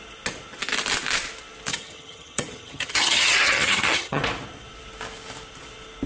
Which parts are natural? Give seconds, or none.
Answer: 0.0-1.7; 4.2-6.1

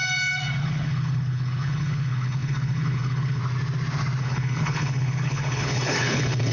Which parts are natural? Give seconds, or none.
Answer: 0.0-0.6; 3.4-4.2

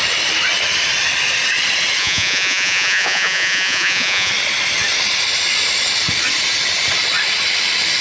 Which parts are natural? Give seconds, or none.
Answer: 0.0-2.0; 4.3-8.0